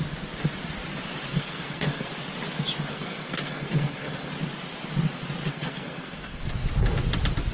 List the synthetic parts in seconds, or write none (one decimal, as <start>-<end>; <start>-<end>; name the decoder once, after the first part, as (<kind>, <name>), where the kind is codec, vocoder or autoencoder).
1.3-2.1 (codec, SNAC); 2.9-4.3; 5.5-6.4